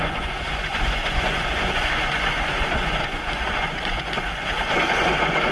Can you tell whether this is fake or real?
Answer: fake